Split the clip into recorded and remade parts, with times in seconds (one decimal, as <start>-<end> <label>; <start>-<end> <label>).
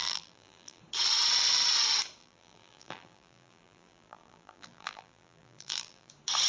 0.0-0.8 remade; 0.8-2.2 recorded; 2.2-6.1 remade; 6.1-6.5 recorded